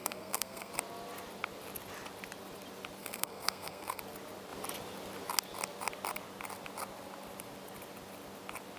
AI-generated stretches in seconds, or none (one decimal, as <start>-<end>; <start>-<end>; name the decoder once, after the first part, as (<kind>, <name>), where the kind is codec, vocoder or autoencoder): 0.0-0.7 (codec, SNAC); 3.0-4.0